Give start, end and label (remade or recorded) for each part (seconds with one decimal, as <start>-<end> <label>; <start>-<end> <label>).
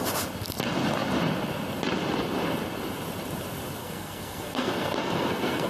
0.0-3.8 recorded; 3.8-5.7 remade